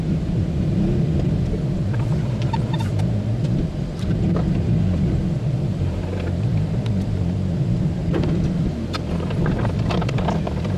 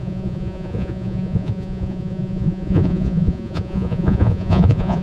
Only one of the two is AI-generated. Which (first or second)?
second